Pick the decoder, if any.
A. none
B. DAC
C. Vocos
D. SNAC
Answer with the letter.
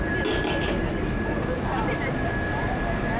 A